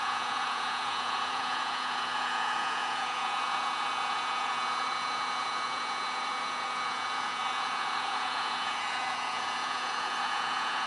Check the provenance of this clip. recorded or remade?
remade